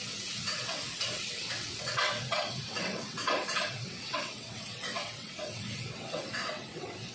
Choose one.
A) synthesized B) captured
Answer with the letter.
A